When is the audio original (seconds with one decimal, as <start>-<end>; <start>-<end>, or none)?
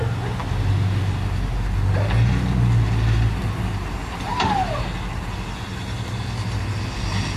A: 0.0-7.4